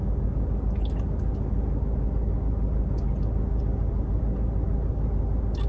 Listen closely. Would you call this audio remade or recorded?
recorded